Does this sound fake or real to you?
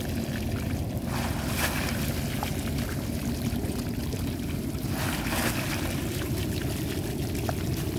real